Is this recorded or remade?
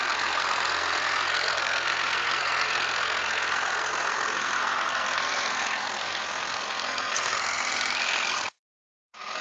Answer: remade